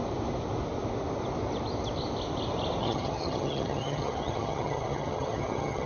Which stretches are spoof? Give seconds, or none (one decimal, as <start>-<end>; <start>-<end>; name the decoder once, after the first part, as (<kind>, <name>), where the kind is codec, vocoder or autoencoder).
2.8-5.9 (vocoder, HiFi-GAN)